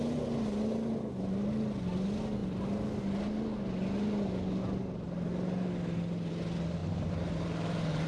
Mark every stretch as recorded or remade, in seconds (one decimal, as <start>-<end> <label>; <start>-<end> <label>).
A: 0.0-6.8 recorded; 6.8-8.1 remade